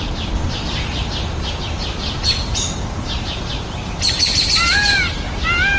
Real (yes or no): no